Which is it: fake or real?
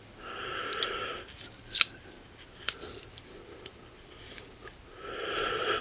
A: real